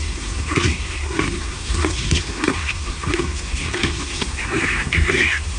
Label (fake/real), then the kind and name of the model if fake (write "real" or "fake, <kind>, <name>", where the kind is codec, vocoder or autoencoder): fake, codec, SNAC